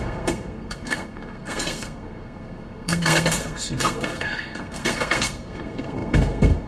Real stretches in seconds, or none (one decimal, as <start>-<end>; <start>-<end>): none